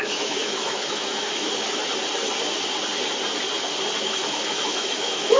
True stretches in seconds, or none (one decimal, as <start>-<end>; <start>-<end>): 1.8-4.0